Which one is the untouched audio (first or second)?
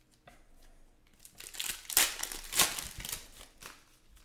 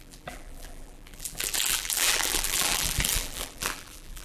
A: first